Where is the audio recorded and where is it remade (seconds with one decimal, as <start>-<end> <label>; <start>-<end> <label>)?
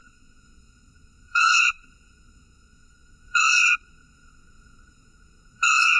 0.0-6.0 remade